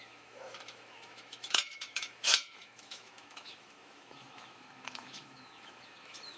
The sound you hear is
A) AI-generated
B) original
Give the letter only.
A